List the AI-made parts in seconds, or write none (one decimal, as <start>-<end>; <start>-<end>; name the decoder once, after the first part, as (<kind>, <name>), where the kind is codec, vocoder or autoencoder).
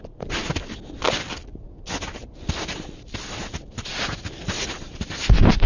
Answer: 0.0-0.4 (vocoder, BigVGAN v2); 1.1-1.5; 3.5-3.9; 5.2-5.7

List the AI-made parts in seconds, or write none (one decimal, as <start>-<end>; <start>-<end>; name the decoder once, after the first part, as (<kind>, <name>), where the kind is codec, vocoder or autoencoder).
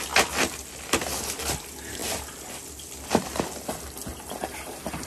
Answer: none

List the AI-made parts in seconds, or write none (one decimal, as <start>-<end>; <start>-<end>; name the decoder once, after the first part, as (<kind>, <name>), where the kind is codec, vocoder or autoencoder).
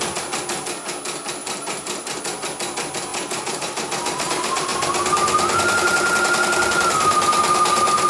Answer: 1.4-2.2 (vocoder, BigVGAN v2); 3.1-4.3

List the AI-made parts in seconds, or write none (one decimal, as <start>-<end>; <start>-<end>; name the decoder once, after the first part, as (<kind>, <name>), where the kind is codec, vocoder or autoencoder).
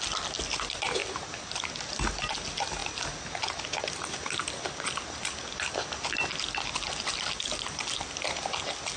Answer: none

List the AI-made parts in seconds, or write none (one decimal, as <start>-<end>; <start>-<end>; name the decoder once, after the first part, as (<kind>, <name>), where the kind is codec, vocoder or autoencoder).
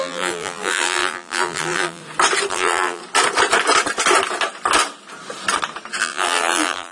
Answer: 0.0-2.0 (vocoder, BigVGAN v2); 2.5-3.0; 6.0-6.9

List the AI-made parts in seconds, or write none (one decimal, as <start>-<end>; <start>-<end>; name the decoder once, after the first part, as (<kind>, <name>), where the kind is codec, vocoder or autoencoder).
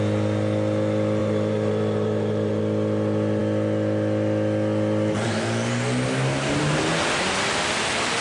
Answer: 1.2-2.6 (vocoder, BigVGAN v2)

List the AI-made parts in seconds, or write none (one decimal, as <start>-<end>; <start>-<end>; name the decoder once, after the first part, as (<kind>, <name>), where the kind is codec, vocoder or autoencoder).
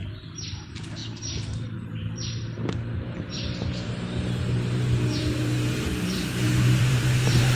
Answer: 0.0-7.6 (vocoder, BigVGAN v2)